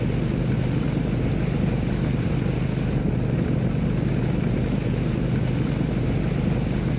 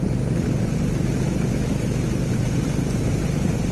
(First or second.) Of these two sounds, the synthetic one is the second